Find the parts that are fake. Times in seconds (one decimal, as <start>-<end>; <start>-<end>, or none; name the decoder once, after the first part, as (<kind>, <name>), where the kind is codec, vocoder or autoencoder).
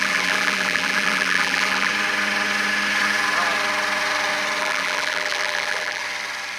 0.0-1.9 (vocoder, BigVGAN v2); 4.6-6.0